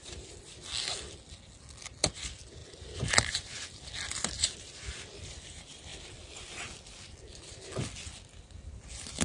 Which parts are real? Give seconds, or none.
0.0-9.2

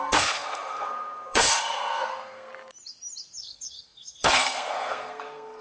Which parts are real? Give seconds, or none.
2.5-3.4

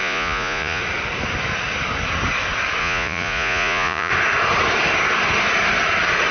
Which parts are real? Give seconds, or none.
0.8-2.8; 4.1-6.3

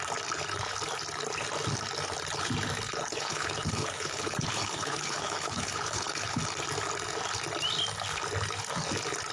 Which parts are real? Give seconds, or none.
0.0-2.9; 6.4-9.3

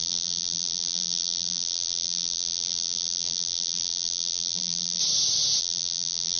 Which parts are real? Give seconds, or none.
5.0-5.6